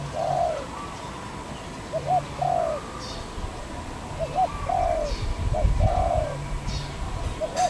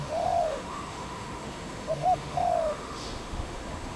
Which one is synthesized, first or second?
second